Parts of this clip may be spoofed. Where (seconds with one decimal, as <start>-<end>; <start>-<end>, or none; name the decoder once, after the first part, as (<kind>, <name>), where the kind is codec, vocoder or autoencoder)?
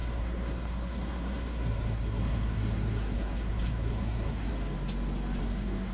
0.0-4.5 (codec, SNAC); 5.4-5.9